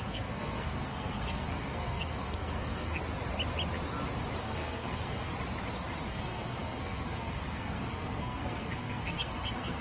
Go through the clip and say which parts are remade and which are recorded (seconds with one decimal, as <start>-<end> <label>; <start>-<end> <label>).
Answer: 0.0-3.0 remade; 3.0-4.4 recorded; 4.4-5.3 remade; 5.3-6.1 recorded; 6.1-9.8 remade